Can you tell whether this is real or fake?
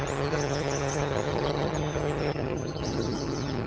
fake